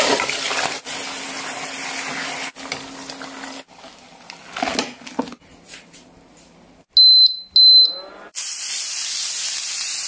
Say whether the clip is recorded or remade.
recorded